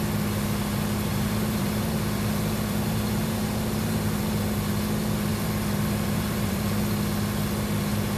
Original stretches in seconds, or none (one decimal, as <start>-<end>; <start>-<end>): 0.0-1.1; 4.7-5.3; 6.8-8.2